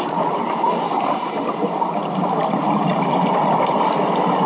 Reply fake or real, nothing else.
real